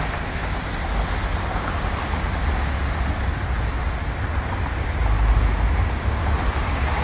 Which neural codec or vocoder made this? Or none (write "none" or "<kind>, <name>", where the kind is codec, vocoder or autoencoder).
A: none